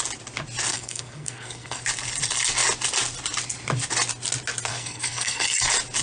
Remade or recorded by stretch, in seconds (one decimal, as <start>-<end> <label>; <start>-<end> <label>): 0.0-0.7 recorded; 0.7-1.8 remade; 1.8-4.7 recorded; 4.7-5.6 remade; 5.6-6.0 recorded